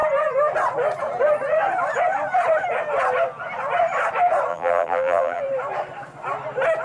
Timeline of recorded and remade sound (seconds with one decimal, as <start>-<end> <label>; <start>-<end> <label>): 0.0-4.5 recorded; 4.5-5.4 remade; 5.4-6.8 recorded